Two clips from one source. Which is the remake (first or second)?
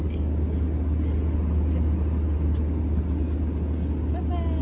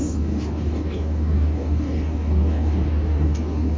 second